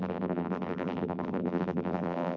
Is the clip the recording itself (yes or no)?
no